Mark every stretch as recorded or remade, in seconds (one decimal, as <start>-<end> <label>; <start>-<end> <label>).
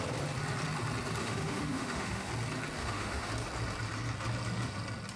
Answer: 0.0-1.2 recorded; 1.2-2.3 remade; 2.3-2.8 recorded; 2.8-3.3 remade; 3.3-5.2 recorded